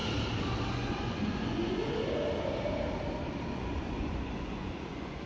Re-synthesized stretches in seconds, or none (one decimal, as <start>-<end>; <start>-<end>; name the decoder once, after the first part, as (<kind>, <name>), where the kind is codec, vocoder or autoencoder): 0.7-1.8 (vocoder, Vocos); 3.5-5.3